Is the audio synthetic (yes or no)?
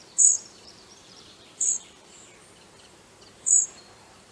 yes